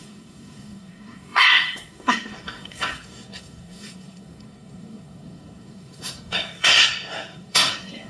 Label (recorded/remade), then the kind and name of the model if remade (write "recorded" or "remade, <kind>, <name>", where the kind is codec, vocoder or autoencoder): remade, codec, SNAC